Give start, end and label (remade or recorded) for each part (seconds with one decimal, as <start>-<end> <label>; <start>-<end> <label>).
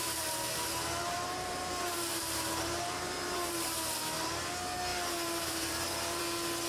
0.0-4.0 remade; 4.0-4.9 recorded; 4.9-6.2 remade; 6.2-6.7 recorded